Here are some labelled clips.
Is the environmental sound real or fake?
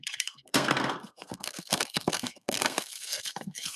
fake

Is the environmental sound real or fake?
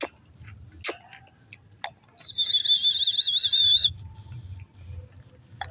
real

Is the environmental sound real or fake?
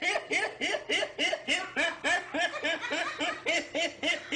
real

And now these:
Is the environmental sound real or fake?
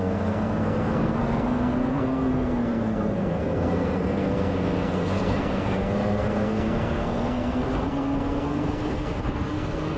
fake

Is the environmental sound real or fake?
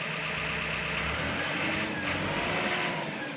real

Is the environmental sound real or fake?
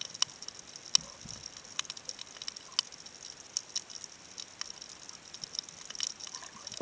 real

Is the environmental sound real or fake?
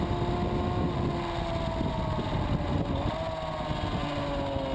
real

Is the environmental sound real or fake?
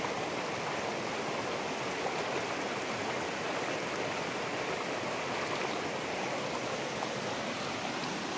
real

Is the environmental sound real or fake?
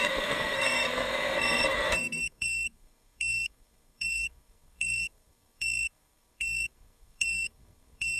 fake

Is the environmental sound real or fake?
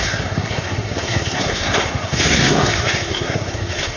fake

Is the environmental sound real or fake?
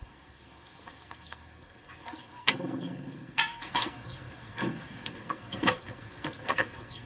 fake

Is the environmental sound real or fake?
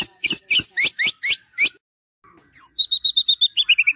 real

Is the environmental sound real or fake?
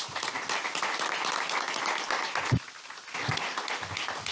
real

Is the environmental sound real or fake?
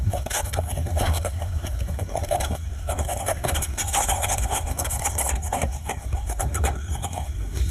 fake